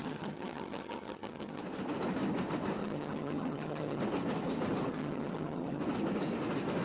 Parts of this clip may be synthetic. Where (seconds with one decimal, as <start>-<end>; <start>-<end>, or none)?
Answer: 0.0-1.6; 2.8-4.0; 4.9-5.8